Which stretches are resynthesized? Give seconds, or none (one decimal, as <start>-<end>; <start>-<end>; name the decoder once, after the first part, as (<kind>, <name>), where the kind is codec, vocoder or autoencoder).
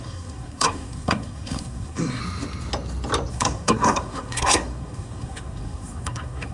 0.0-2.2 (codec, SNAC); 3.3-6.5